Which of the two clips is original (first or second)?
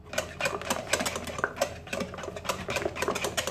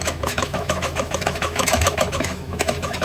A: first